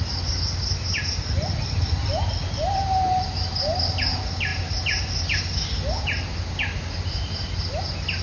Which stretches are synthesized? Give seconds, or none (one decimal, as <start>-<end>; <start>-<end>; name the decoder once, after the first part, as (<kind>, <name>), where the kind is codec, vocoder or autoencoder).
none